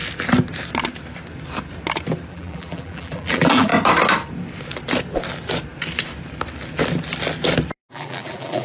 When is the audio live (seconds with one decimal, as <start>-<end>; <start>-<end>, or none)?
0.0-2.3; 3.7-7.9